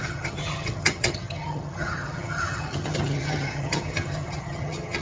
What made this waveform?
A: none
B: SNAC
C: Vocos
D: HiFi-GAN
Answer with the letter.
D